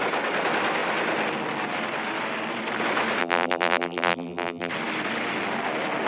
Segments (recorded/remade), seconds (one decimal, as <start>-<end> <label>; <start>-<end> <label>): 0.0-3.2 recorded; 3.2-4.7 remade; 4.7-6.1 recorded